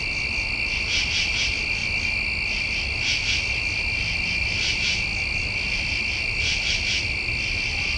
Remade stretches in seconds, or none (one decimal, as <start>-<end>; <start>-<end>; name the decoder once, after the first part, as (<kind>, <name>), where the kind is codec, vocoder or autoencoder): none